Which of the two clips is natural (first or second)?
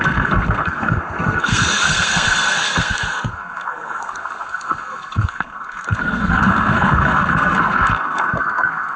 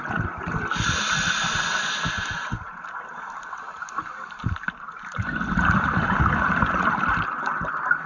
second